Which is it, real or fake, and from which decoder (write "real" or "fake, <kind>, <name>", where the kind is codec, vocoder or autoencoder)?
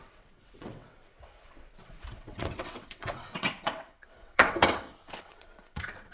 fake, vocoder, WaveNeXt